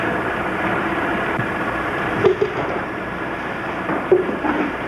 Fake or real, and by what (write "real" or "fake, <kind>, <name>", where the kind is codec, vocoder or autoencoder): fake, vocoder, BigVGAN v2